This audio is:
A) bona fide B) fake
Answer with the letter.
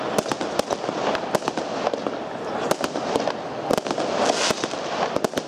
A